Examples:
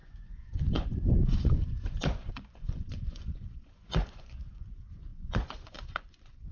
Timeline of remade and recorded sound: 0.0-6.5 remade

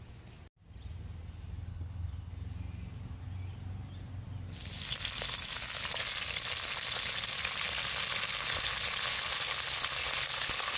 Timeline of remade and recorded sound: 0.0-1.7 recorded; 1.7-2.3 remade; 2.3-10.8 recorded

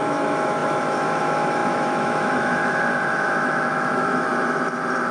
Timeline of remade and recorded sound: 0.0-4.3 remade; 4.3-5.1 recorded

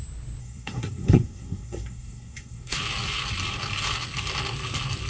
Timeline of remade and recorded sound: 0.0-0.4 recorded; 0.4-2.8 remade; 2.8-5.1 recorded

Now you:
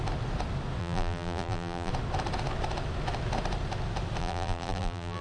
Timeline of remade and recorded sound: 0.0-0.8 recorded; 0.8-1.9 remade; 1.9-4.2 recorded; 4.2-5.2 remade

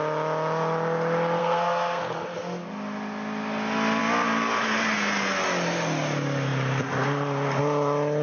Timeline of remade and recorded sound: 0.0-1.4 recorded; 1.4-2.0 remade; 2.0-8.2 recorded

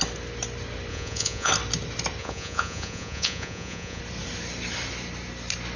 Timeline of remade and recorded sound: 0.0-0.9 recorded; 0.9-1.5 remade; 1.5-2.2 recorded; 2.2-4.0 remade; 4.0-5.8 recorded